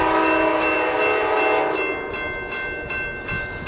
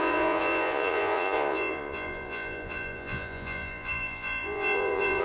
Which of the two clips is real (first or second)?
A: first